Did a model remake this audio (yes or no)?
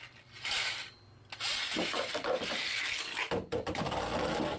no